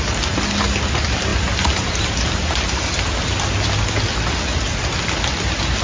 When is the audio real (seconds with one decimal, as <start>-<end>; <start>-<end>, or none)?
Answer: 0.0-5.8